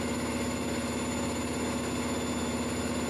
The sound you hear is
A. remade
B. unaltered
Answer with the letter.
B